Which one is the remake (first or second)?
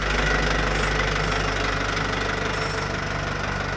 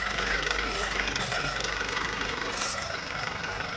second